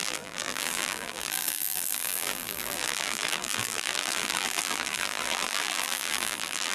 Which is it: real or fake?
fake